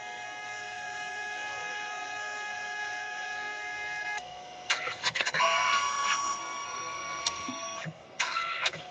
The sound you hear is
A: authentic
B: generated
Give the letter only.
B